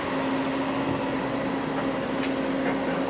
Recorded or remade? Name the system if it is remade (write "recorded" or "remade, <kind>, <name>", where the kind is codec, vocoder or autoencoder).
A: recorded